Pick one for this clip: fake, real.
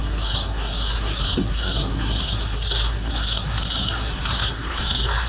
fake